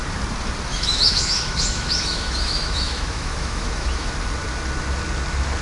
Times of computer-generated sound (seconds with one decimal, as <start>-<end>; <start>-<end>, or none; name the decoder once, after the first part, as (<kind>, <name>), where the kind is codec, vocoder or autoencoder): 0.7-4.1 (autoencoder, DAC-VAE)